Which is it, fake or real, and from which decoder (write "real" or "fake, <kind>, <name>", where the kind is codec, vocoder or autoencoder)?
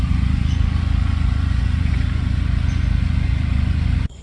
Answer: fake, vocoder, Vocos